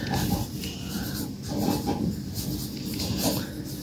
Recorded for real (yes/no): yes